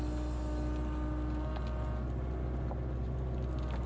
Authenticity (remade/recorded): recorded